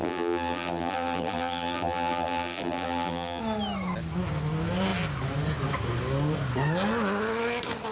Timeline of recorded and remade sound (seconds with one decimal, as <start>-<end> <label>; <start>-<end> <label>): 0.0-3.4 remade; 3.4-7.9 recorded